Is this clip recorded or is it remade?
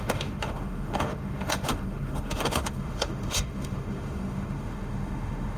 remade